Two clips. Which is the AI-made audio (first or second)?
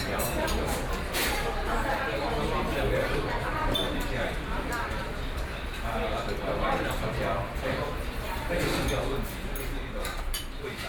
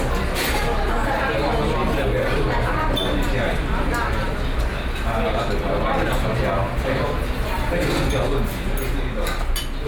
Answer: first